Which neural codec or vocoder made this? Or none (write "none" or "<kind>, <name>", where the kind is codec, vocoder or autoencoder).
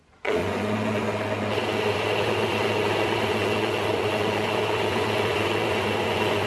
vocoder, Vocos